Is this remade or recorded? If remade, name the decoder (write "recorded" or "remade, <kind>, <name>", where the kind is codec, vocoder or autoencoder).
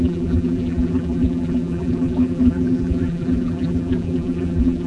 remade, vocoder, BigVGAN v2